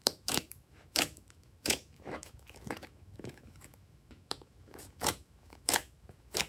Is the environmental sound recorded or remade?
remade